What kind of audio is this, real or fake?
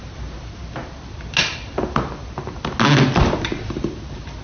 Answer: real